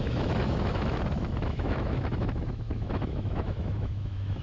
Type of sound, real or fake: fake